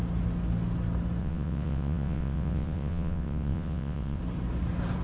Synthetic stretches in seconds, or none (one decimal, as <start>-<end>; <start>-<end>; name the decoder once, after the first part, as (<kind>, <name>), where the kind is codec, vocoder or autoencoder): 1.2-4.2 (vocoder, WaveNeXt)